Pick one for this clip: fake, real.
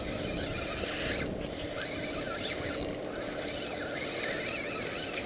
real